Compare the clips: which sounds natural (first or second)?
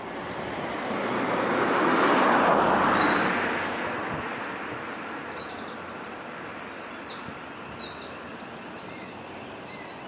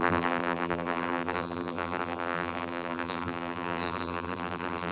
first